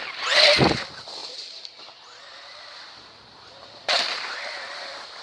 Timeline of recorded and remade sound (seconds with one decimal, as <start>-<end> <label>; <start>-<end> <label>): 0.0-5.2 recorded